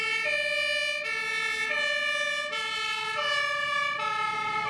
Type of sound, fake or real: real